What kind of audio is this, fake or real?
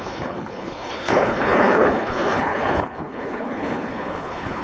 fake